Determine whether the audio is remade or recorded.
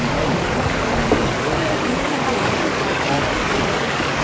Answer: remade